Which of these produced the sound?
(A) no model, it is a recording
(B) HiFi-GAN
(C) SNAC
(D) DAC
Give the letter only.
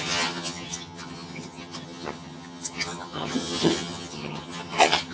B